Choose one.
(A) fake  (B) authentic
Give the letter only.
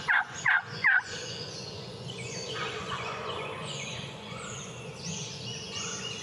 A